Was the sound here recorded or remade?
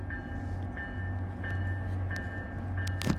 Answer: recorded